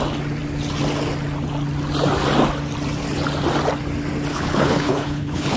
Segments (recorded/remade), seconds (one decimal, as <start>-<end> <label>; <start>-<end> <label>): 0.0-4.3 recorded; 4.3-5.6 remade